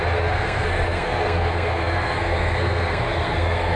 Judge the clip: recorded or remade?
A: remade